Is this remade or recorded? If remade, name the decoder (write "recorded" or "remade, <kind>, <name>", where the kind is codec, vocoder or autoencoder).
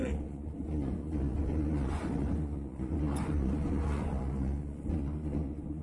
remade, vocoder, Vocos